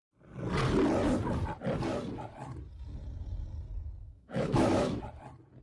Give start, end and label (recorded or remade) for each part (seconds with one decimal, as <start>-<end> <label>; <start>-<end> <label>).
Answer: 0.0-4.0 recorded; 4.0-5.0 remade; 5.0-5.6 recorded